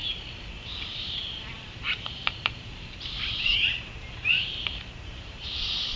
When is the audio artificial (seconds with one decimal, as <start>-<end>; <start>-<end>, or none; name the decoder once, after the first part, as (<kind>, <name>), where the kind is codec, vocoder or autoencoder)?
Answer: 0.0-6.0 (vocoder, BigVGAN v2)